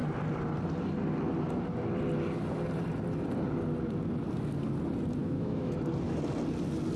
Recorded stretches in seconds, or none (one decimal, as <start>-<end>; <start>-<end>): 0.0-5.2; 5.7-7.0